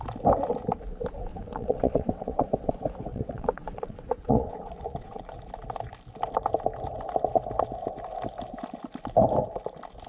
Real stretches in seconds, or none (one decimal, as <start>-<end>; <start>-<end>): 0.0-1.3; 2.7-3.1; 5.2-10.1